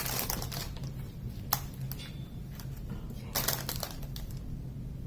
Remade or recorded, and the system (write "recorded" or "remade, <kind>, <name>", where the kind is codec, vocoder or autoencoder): recorded